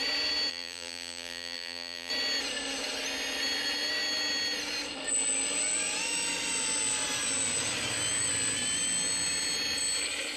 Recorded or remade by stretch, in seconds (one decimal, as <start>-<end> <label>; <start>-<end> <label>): 0.0-0.5 recorded; 0.5-2.1 remade; 2.1-10.4 recorded